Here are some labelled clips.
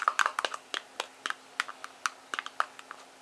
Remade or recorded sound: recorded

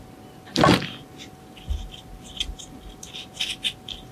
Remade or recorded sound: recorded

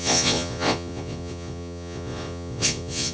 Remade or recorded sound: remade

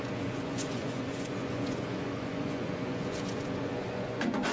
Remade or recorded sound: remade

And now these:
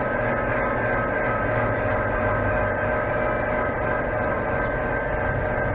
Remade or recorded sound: recorded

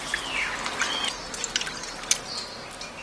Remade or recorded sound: recorded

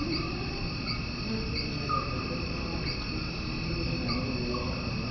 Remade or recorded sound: recorded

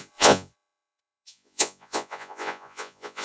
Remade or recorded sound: remade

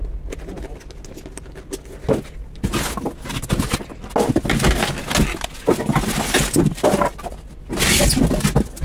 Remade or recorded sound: recorded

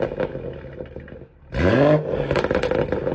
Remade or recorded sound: recorded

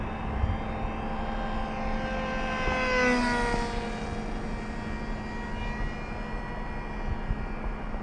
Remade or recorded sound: recorded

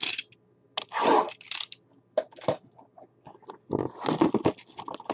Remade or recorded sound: recorded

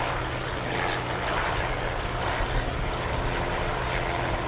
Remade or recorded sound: recorded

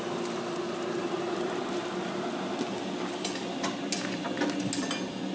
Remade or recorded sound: recorded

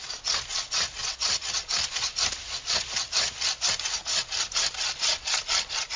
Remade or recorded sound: recorded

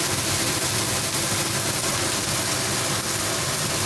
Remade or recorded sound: recorded